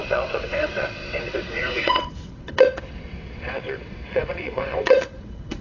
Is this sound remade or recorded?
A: remade